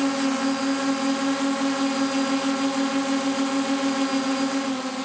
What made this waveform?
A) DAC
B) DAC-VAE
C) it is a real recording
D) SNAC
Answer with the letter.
C